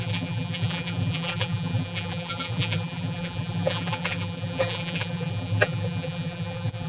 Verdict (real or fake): fake